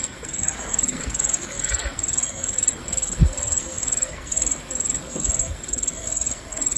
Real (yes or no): no